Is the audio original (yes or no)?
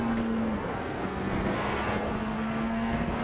no